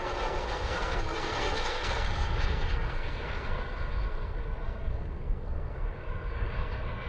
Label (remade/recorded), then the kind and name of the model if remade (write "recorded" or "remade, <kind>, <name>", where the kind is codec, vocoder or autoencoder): remade, codec, SNAC